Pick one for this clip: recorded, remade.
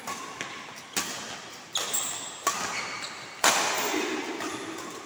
recorded